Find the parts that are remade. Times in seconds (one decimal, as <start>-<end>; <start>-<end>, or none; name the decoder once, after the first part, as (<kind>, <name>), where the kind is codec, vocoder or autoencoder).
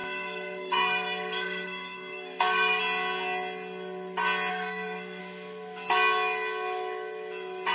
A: 0.0-2.8 (codec, SNAC); 4.5-5.2